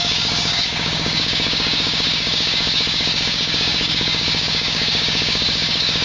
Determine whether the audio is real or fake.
fake